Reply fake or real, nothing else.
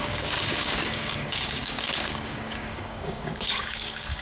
fake